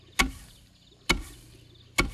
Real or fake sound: real